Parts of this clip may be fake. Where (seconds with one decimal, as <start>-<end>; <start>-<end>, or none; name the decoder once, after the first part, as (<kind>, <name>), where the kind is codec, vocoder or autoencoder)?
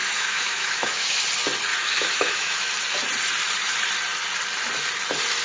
0.0-1.2 (autoencoder, DAC-VAE); 1.7-2.7